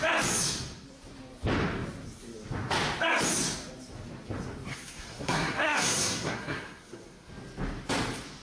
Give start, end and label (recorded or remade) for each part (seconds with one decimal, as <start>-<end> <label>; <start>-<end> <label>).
0.0-4.7 recorded; 4.7-7.3 remade; 7.3-8.4 recorded

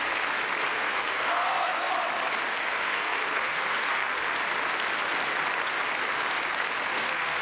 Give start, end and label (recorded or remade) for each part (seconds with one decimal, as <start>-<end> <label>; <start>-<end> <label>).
0.0-0.7 recorded; 0.7-1.9 remade; 1.9-2.6 recorded; 2.6-4.2 remade; 4.2-6.9 recorded; 6.9-7.4 remade

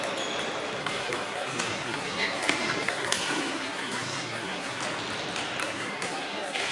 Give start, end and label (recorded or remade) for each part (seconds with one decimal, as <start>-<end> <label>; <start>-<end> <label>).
0.0-0.8 recorded; 0.8-4.8 remade; 4.8-5.6 recorded; 5.6-6.7 remade

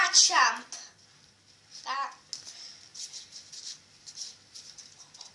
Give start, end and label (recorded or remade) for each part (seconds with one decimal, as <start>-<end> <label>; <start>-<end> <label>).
0.0-5.3 recorded

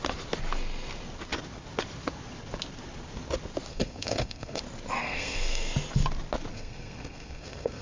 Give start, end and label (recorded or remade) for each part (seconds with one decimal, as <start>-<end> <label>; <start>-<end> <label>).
0.0-3.7 recorded; 3.7-4.6 remade; 4.6-5.0 recorded; 5.0-5.7 remade; 5.7-6.5 recorded; 6.5-7.8 remade

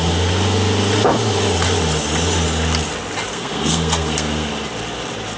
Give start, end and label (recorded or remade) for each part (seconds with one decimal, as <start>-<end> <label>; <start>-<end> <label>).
0.0-3.3 recorded; 3.3-4.5 remade; 4.5-5.4 recorded